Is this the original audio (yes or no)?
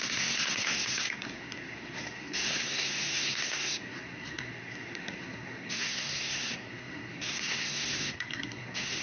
no